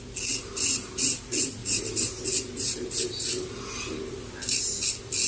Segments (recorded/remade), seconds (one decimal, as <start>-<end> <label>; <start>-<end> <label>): 0.0-5.3 recorded